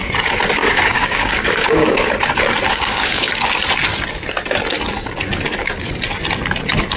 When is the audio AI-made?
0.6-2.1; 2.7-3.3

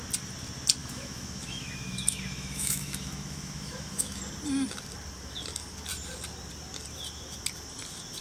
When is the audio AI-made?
0.8-4.2